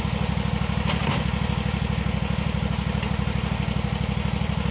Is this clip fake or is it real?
real